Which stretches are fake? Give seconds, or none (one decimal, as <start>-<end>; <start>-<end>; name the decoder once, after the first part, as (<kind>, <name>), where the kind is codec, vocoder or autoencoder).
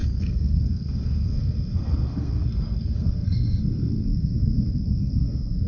0.0-5.7 (codec, SNAC)